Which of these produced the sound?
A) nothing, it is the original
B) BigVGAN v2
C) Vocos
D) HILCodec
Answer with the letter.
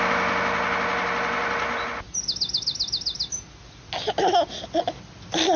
A